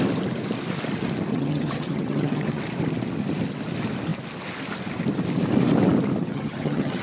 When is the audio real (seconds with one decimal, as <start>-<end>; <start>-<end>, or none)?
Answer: 0.0-1.3; 2.6-6.2